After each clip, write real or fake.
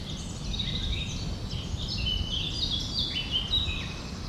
real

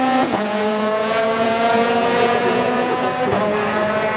fake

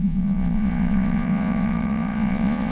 fake